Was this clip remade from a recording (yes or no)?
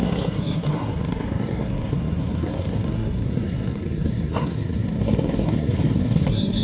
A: yes